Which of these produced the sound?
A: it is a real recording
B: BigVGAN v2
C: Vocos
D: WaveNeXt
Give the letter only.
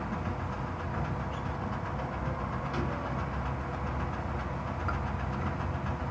A